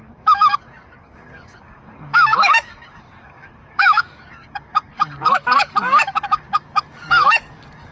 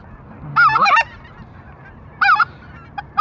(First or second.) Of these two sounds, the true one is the second